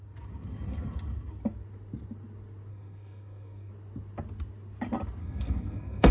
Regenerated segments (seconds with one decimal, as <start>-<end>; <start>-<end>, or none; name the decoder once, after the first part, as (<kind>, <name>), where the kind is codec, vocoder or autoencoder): 2.7-3.7 (codec, SNAC); 5.2-6.1